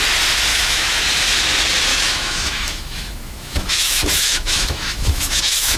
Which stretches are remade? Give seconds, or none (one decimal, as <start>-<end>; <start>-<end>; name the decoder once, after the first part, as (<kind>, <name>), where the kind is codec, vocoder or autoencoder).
0.5-1.0 (autoencoder, DAC-VAE); 1.9-5.8